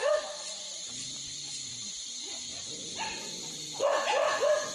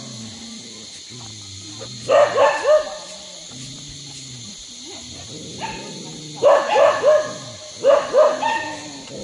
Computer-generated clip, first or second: first